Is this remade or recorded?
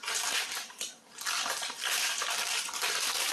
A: remade